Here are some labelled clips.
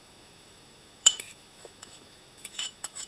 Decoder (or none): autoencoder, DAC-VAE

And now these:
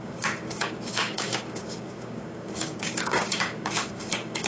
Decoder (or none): codec, DAC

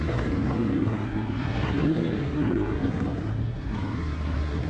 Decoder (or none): codec, SNAC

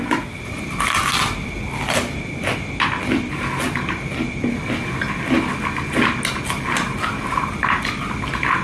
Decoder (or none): none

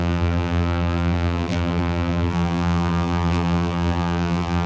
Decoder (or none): vocoder, BigVGAN v2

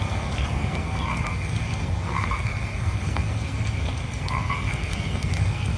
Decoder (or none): codec, SNAC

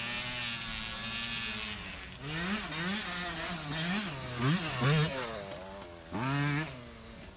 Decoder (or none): none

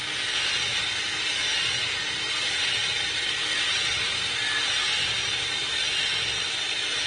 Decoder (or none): none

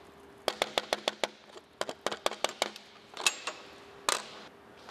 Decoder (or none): none